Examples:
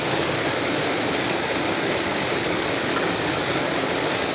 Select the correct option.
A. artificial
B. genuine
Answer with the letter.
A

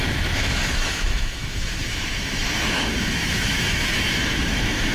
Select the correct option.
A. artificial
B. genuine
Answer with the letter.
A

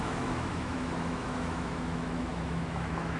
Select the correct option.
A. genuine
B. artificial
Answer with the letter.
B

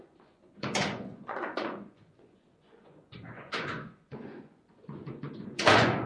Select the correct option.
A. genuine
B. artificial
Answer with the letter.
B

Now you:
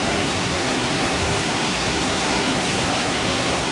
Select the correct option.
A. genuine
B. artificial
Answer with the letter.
B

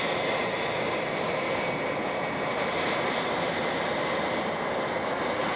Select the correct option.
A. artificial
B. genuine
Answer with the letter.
B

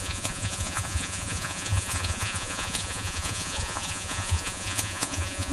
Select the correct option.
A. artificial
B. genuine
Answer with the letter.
A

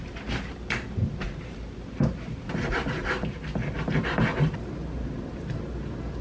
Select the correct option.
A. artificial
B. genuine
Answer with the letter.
B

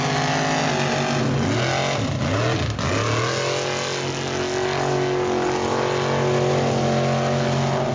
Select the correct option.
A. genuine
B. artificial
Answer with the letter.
A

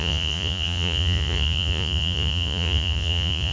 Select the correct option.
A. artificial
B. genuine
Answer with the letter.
A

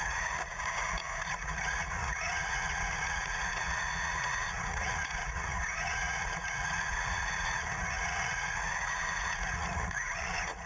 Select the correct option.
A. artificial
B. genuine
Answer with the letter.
A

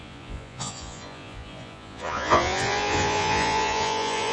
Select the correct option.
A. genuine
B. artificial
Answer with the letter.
B